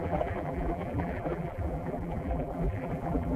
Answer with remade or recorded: remade